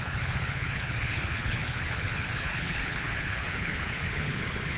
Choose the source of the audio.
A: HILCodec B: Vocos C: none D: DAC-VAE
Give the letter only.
A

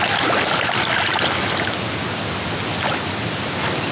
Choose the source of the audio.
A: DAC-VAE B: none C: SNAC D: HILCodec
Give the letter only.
B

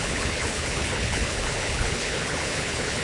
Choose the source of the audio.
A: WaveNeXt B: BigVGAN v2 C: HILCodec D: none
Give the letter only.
C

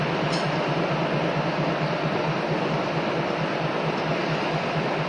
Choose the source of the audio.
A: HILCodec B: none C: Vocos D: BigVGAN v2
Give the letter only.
B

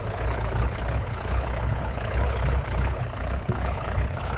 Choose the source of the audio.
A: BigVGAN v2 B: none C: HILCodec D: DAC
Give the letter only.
C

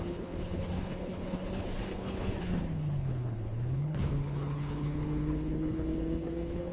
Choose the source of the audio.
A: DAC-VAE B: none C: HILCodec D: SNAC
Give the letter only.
C